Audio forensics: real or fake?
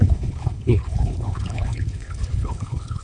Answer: fake